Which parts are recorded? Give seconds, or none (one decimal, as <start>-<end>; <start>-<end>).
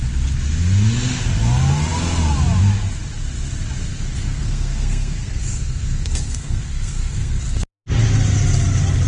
0.0-3.9; 7.4-9.1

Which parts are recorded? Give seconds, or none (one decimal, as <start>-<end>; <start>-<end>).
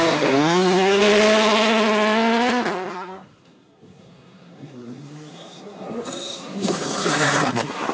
1.0-2.9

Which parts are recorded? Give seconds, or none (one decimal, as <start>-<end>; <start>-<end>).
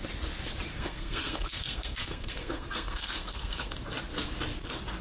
0.0-0.7; 3.7-5.0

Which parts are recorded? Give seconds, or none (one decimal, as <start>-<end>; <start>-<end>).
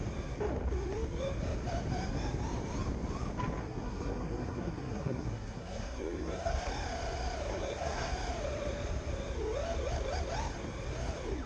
0.0-3.6; 6.7-7.5; 8.1-11.5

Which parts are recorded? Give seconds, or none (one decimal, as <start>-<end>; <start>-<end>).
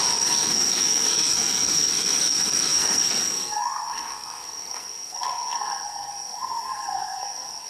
none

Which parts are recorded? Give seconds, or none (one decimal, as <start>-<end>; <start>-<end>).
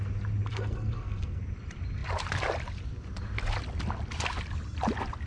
0.0-0.5; 1.4-5.3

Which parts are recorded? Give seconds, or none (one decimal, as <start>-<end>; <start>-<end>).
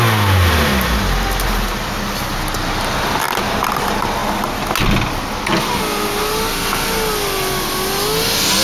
0.0-8.6